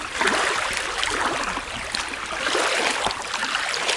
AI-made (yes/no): no